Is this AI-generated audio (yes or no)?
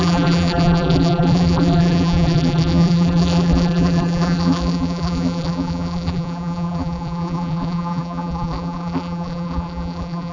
yes